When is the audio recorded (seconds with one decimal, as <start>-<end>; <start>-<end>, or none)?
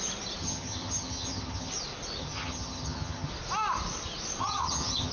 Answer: 0.0-0.4; 1.7-2.2; 3.3-4.4